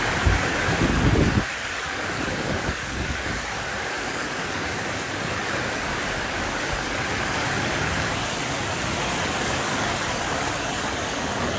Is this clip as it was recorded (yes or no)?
no